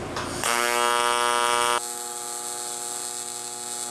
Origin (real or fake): real